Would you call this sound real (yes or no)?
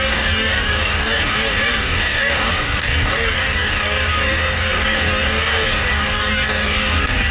no